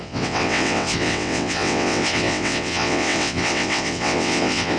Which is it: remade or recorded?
remade